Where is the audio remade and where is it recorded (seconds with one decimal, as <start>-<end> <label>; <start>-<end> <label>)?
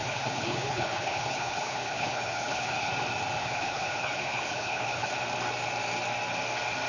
0.0-2.9 remade; 2.9-3.4 recorded; 3.4-5.1 remade; 5.1-6.9 recorded